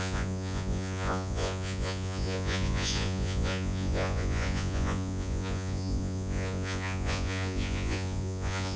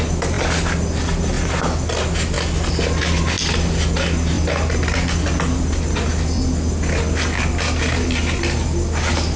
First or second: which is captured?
second